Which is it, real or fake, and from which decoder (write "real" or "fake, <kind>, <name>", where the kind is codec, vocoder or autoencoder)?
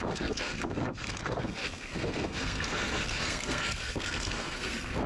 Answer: fake, codec, SNAC